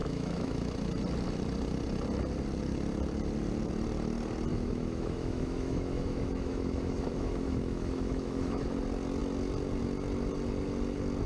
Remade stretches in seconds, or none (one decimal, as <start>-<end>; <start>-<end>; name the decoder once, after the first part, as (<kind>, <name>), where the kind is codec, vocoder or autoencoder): 0.0-0.7 (autoencoder, DAC-VAE); 4.5-8.6